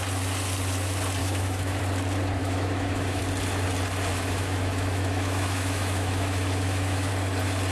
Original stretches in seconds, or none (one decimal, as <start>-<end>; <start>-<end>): 0.0-1.2; 1.8-2.4; 3.2-4.1; 7.1-7.7